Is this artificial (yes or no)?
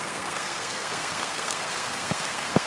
yes